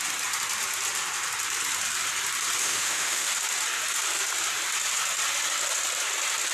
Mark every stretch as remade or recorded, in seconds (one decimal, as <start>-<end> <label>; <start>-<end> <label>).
0.0-2.6 recorded; 2.6-3.3 remade; 3.3-6.5 recorded